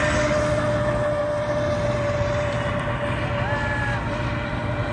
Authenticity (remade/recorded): recorded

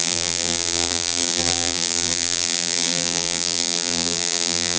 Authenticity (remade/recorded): remade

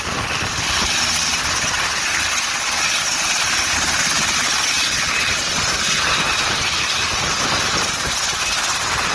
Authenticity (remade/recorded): recorded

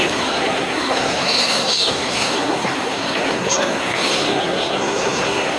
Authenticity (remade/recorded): remade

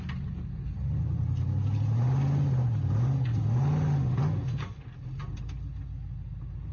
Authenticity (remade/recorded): recorded